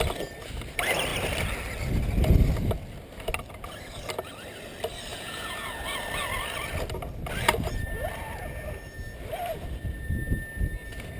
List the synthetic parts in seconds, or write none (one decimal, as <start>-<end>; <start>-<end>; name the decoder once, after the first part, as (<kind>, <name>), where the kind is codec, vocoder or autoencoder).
5.1-5.7 (vocoder, Vocos)